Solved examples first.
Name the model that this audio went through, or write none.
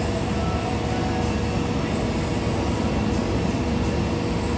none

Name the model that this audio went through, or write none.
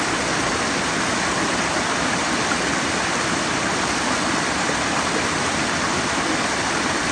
none